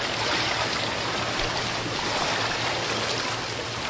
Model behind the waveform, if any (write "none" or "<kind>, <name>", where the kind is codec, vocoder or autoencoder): none